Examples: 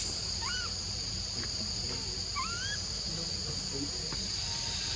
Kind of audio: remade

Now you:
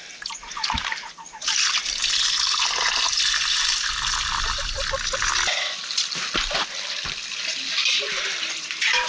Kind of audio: recorded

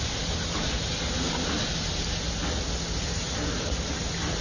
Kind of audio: recorded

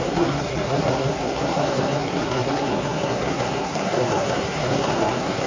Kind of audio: remade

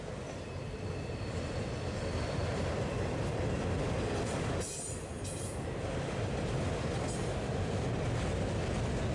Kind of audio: recorded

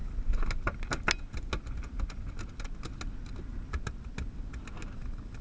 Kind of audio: recorded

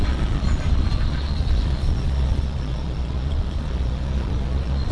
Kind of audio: remade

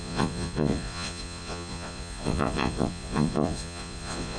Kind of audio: remade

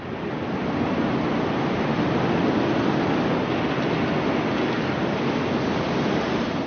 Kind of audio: recorded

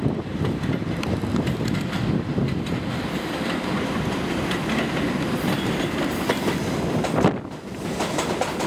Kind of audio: remade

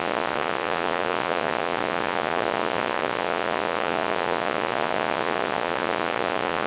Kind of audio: remade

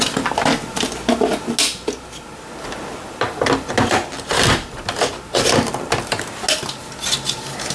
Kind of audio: recorded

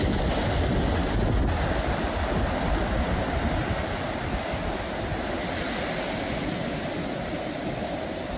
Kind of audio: recorded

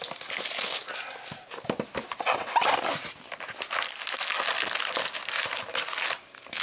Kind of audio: recorded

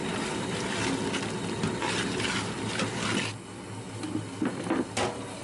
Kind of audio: recorded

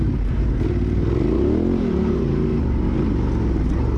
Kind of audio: recorded